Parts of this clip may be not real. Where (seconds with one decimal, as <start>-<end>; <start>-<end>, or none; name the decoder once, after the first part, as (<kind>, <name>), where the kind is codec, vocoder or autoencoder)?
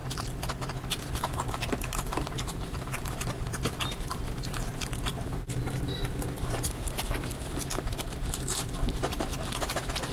1.1-10.1 (vocoder, BigVGAN v2)